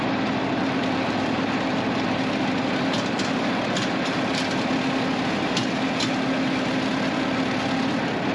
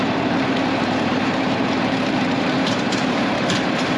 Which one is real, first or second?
first